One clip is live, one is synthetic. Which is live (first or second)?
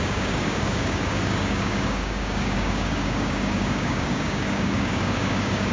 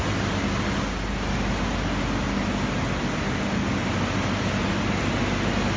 second